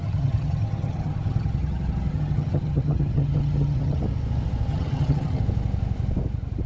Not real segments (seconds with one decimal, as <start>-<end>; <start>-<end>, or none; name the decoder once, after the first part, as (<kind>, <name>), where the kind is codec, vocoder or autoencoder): 0.0-4.0 (vocoder, HiFi-GAN); 4.7-5.4